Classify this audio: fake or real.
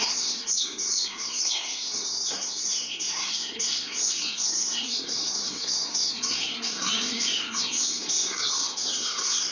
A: fake